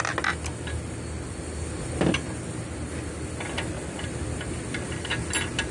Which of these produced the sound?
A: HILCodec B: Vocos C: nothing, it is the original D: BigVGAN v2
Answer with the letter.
C